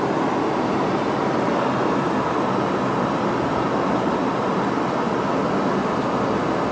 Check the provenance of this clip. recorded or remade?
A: recorded